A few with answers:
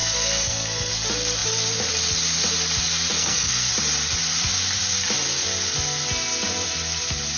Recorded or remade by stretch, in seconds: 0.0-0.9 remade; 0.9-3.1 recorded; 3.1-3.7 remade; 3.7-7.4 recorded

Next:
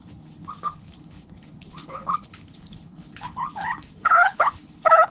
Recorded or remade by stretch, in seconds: 0.0-5.1 remade

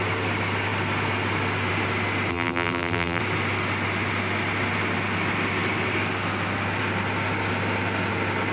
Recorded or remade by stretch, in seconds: 0.0-2.3 recorded; 2.3-3.2 remade; 3.2-8.5 recorded

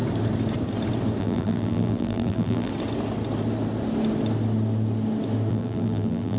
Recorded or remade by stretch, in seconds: 0.0-1.2 recorded; 1.2-2.7 remade; 2.7-5.5 recorded; 5.5-6.4 remade

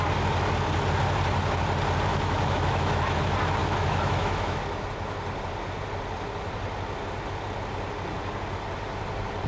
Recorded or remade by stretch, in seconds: 0.0-2.1 recorded; 2.1-3.2 remade; 3.2-3.6 recorded; 3.6-4.6 remade; 4.6-9.5 recorded

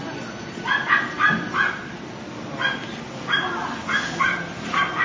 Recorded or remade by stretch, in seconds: 0.0-5.0 recorded

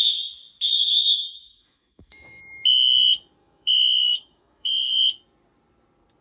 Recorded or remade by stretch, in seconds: 0.0-0.7 recorded; 0.7-2.4 remade; 2.4-3.4 recorded; 3.4-5.0 remade; 5.0-6.2 recorded

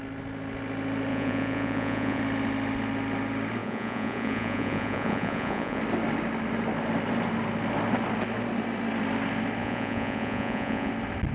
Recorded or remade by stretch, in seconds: 0.0-1.1 recorded; 1.1-2.2 remade; 2.2-3.6 recorded; 3.6-5.8 remade; 5.8-9.6 recorded; 9.6-10.9 remade; 10.9-11.3 recorded